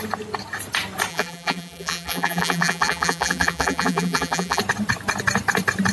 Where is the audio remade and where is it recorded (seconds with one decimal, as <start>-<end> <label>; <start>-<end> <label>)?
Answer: 0.0-1.1 recorded; 1.1-4.6 remade; 4.6-5.9 recorded